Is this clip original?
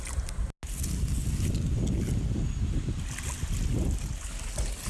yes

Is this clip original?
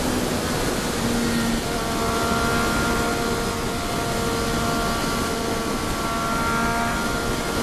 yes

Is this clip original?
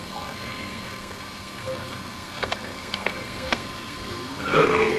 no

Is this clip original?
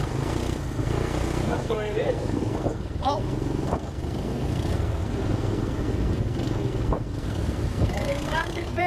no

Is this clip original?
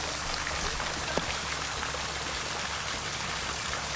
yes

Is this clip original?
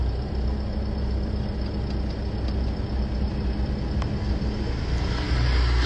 yes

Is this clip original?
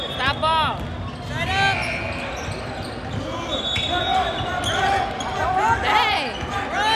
yes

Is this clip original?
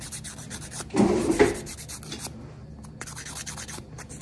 yes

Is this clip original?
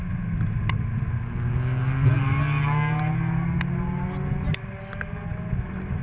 yes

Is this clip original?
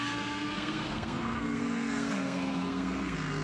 no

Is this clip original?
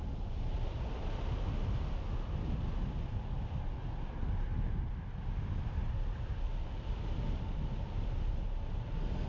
yes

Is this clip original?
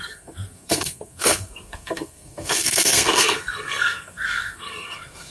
no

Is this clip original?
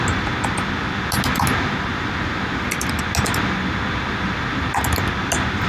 yes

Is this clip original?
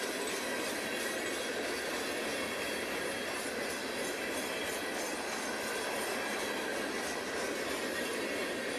yes